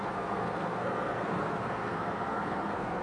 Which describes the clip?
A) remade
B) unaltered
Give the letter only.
A